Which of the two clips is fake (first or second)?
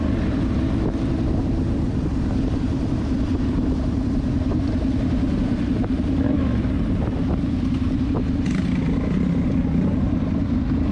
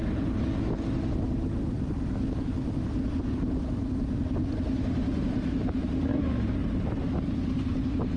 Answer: first